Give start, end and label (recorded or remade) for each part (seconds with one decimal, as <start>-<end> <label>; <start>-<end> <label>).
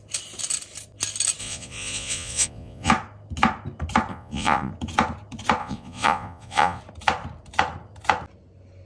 0.0-1.4 recorded; 1.4-2.9 remade; 2.9-4.1 recorded; 4.1-4.7 remade; 4.7-5.6 recorded; 5.6-6.8 remade; 6.8-8.9 recorded